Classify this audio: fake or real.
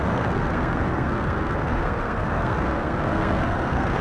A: fake